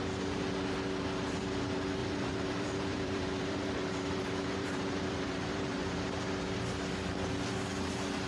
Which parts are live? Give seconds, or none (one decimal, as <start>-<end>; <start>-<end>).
0.0-2.0; 6.1-8.3